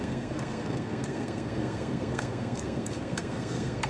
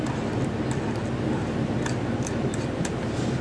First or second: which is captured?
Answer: second